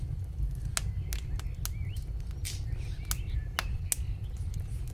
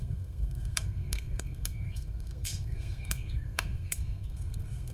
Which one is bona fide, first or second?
first